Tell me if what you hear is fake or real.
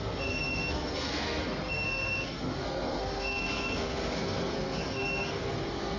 fake